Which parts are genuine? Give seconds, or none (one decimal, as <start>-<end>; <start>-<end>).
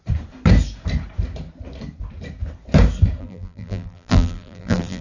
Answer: 0.0-3.2